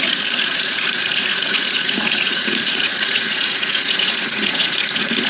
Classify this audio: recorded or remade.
remade